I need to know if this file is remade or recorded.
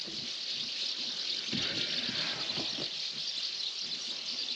recorded